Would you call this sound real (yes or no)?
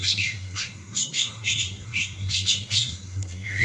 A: no